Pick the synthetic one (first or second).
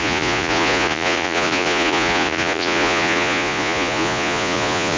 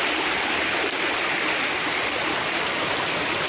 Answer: first